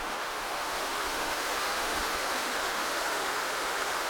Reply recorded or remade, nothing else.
remade